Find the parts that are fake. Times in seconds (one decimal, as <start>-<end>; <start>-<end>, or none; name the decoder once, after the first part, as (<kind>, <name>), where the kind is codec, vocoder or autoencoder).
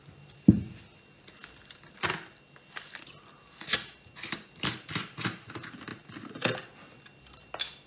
none